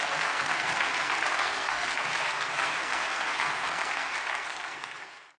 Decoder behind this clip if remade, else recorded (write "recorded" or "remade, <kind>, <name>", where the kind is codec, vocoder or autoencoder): remade, codec, SNAC